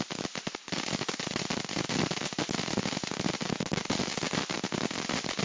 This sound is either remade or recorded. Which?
recorded